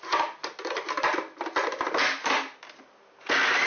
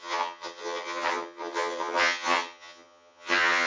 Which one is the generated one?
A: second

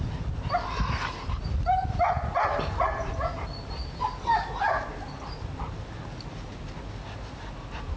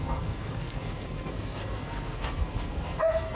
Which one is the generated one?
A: second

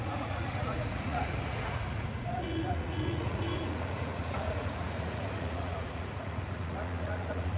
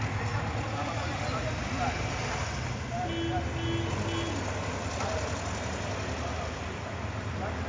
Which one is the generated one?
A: first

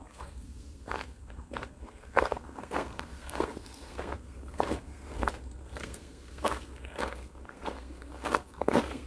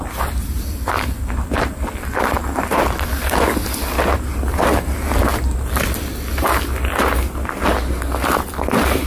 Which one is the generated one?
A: first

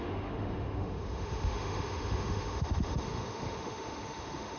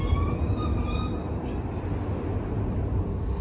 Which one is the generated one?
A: first